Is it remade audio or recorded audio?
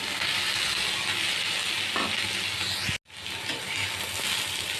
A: recorded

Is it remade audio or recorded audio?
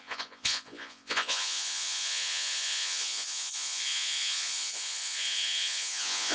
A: remade